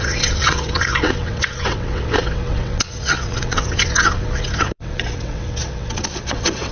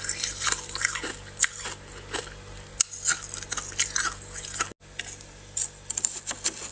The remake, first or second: first